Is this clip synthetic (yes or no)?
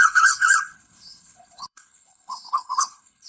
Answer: yes